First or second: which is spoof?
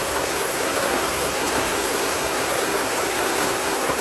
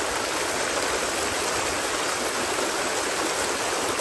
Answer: first